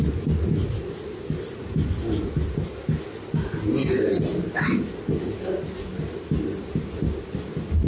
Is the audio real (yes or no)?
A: yes